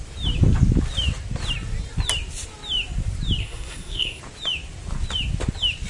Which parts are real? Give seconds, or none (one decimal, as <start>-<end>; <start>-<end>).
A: 0.0-3.4; 4.2-5.9